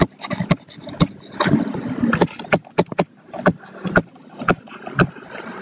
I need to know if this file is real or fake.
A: real